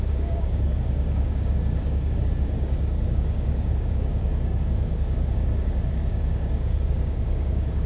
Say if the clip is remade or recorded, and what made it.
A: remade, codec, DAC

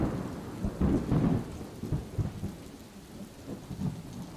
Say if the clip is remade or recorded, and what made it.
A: recorded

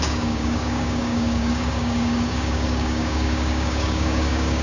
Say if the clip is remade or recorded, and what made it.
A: remade, codec, DAC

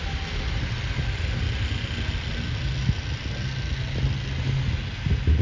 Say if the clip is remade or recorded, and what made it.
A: recorded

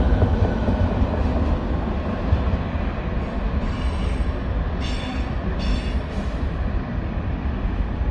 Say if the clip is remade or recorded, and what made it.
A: recorded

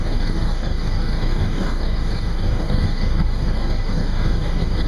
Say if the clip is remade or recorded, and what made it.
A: remade, codec, DAC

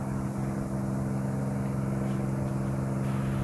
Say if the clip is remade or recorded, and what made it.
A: recorded